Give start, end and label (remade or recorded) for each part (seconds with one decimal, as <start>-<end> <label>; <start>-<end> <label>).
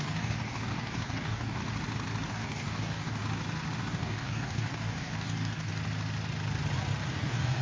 0.0-1.6 remade; 1.6-2.3 recorded; 2.3-3.2 remade; 3.2-3.8 recorded; 3.8-5.7 remade; 5.7-7.1 recorded; 7.1-7.6 remade